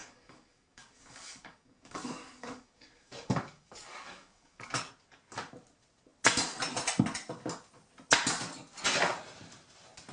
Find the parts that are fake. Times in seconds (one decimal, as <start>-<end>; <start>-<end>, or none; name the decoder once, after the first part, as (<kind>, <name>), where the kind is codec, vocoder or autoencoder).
0.0-4.9 (codec, DAC)